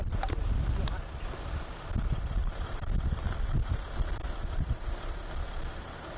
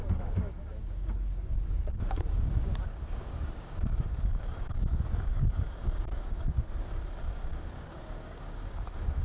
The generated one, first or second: second